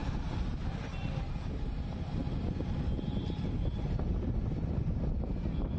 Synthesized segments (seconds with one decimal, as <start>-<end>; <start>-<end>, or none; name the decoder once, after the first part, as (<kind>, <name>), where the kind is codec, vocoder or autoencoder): none